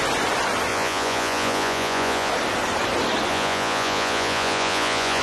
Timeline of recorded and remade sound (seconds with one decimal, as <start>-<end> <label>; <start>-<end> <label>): 0.0-0.7 recorded; 0.7-2.3 remade; 2.3-3.3 recorded; 3.3-5.2 remade